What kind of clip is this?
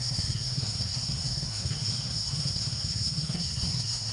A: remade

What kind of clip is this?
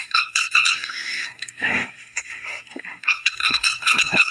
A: remade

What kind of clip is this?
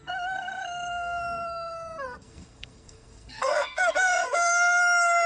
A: remade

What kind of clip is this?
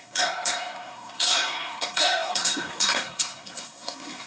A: remade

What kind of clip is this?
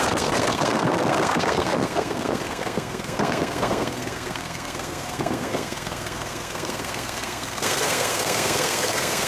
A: remade